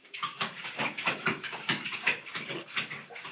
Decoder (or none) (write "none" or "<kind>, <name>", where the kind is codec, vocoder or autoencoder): codec, DAC